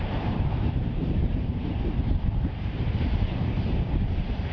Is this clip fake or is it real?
fake